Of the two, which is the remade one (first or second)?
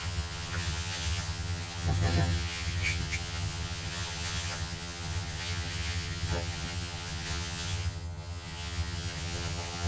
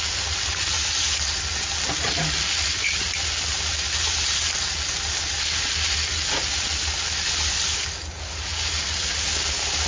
first